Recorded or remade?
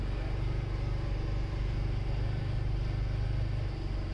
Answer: recorded